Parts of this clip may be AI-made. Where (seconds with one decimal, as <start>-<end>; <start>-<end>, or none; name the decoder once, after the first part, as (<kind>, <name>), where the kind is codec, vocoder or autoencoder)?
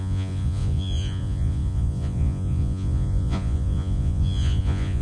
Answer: 0.0-5.0 (vocoder, Vocos)